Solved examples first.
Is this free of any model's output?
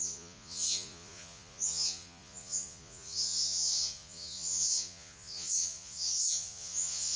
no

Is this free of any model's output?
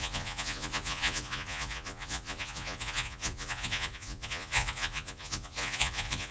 no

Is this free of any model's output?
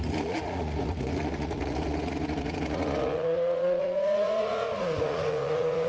no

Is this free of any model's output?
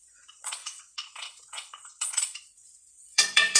no